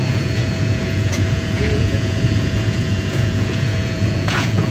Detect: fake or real fake